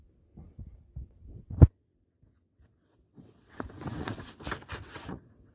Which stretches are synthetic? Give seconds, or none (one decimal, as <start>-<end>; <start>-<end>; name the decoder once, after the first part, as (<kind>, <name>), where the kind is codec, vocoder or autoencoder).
1.3-4.3 (vocoder, WaveNeXt); 4.8-5.5